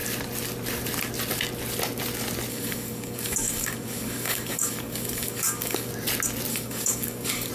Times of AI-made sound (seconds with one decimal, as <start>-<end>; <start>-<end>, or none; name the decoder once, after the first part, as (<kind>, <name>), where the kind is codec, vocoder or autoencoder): 2.5-5.9 (codec, DAC); 6.5-7.5

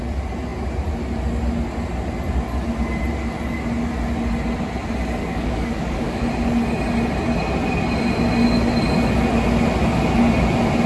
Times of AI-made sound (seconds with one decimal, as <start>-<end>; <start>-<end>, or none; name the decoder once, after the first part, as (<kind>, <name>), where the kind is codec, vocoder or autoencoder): 5.2-6.2 (codec, DAC)

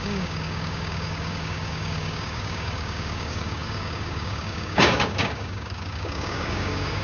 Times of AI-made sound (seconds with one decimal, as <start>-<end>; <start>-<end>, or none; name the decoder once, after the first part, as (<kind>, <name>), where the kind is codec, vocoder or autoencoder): 0.0-7.0 (codec, DAC)

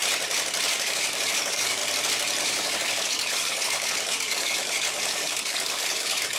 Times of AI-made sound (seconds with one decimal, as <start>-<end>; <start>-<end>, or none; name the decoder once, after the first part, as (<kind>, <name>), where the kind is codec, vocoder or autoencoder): 0.7-1.8 (codec, DAC); 2.4-6.4